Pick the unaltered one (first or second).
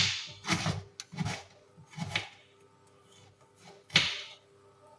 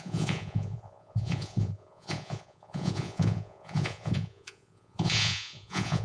first